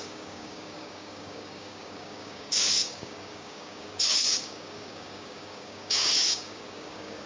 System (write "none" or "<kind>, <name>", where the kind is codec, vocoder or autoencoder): codec, DAC